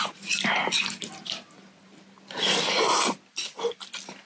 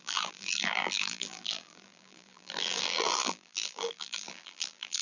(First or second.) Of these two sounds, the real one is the first